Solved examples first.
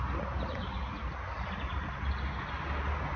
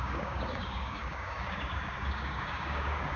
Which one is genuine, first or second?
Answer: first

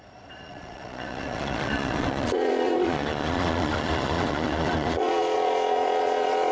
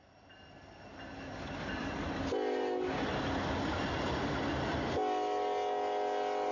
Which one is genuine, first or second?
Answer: second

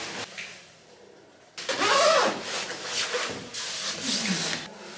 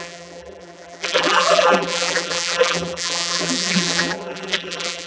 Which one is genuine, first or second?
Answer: first